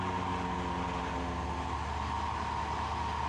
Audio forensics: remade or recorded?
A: recorded